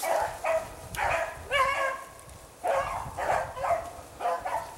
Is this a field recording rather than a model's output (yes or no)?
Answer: yes